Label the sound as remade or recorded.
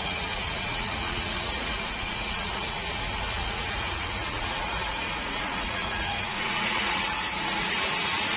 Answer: remade